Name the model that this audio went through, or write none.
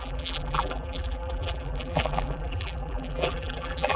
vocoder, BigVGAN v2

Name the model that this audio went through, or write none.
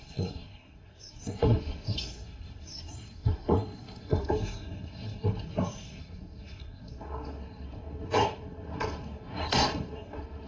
codec, SNAC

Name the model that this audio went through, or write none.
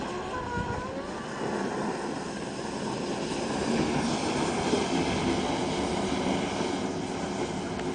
none